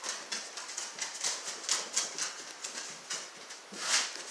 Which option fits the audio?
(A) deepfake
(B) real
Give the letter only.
B